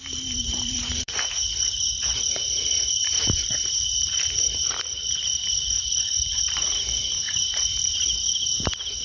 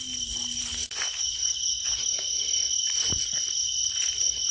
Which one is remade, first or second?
first